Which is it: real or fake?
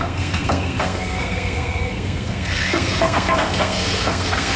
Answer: fake